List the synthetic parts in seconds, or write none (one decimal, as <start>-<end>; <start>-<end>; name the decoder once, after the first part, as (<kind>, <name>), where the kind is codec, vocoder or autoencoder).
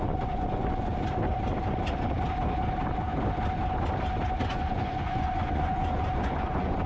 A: 0.0-0.9 (vocoder, Vocos); 4.5-6.9